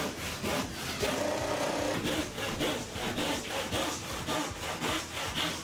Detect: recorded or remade recorded